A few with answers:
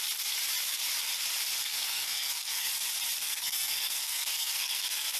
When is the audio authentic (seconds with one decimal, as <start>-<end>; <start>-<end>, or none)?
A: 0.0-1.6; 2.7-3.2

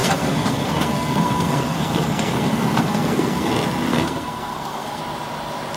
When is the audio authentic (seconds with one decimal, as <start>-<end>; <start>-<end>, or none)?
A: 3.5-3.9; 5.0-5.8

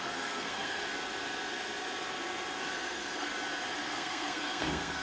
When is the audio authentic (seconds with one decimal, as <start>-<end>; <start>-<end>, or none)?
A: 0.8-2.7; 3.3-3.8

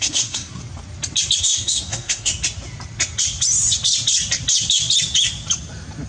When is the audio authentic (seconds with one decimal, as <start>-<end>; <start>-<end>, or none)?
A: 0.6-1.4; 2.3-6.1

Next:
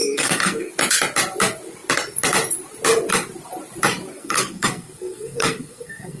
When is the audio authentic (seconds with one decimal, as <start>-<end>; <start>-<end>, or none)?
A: 0.7-4.1

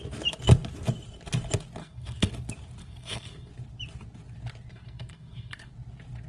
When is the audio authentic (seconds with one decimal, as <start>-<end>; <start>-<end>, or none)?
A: 0.0-1.8; 2.3-2.8; 3.5-4.7; 5.7-6.3